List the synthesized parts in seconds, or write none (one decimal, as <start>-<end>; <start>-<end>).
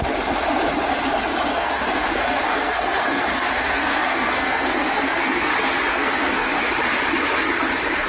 1.5-5.5; 5.9-6.7